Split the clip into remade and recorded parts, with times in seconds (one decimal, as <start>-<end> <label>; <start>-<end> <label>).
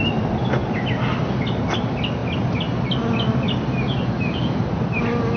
0.0-5.4 recorded